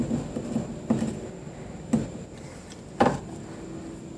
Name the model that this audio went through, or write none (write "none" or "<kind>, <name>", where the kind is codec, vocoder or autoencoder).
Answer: none